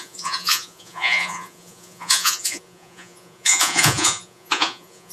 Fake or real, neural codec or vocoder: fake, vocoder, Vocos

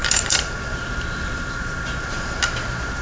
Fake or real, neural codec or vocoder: fake, vocoder, BigVGAN v2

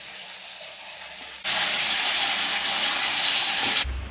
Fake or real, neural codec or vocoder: real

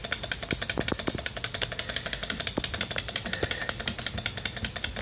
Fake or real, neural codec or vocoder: real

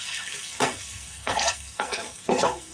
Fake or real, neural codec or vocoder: fake, codec, SNAC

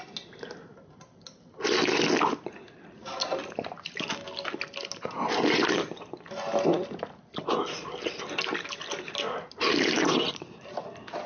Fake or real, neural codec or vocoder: real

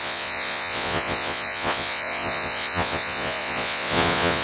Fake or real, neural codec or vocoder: fake, vocoder, Vocos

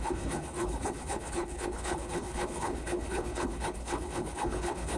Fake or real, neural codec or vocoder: fake, codec, HILCodec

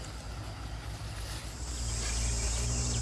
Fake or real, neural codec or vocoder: real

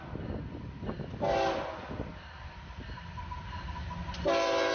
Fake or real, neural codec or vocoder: real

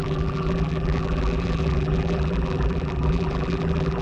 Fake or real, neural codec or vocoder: fake, vocoder, BigVGAN v2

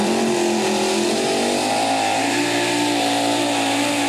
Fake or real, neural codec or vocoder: real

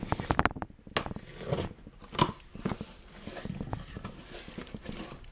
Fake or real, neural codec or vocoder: real